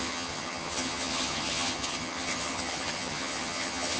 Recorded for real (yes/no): no